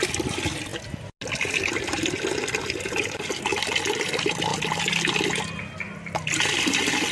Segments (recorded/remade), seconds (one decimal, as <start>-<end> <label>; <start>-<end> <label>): 0.0-7.1 recorded